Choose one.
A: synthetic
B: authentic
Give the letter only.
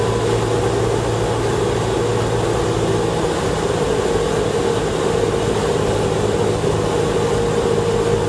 B